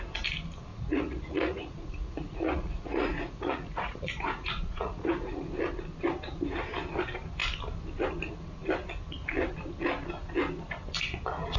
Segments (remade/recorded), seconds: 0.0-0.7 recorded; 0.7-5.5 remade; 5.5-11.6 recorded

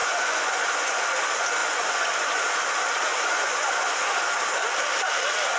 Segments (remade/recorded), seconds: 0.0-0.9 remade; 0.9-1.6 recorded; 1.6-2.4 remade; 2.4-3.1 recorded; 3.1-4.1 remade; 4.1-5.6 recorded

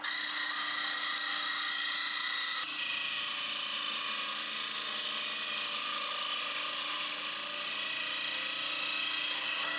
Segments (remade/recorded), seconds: 0.0-9.8 recorded